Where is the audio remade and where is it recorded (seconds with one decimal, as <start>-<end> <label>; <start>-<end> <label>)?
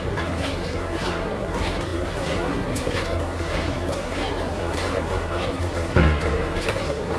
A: 0.0-7.2 remade